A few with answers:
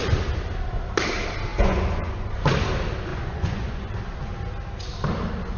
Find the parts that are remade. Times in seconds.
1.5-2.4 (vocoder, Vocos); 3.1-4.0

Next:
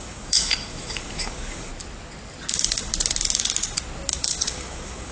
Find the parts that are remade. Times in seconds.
0.0-1.7 (codec, DAC); 2.5-2.9; 4.1-5.1

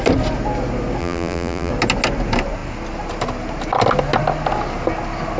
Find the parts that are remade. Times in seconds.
1.0-1.7 (vocoder, BigVGAN v2)

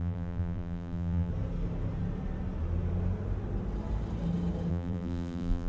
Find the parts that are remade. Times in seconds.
0.0-1.3 (vocoder, BigVGAN v2); 4.7-5.7

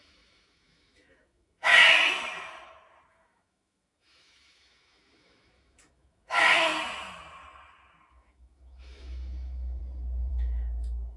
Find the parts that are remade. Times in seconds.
0.0-1.7 (autoencoder, DAC-VAE); 3.1-6.7; 8.1-9.8; 10.3-11.2

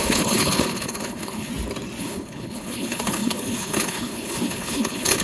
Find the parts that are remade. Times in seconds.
0.0-1.5 (codec, HILCodec); 2.0-5.2

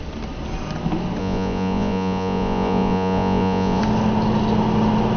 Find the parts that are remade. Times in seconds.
1.2-3.8 (vocoder, Vocos)